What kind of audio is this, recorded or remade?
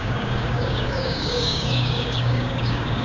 remade